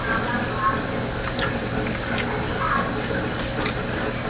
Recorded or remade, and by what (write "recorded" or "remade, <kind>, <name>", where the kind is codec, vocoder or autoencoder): recorded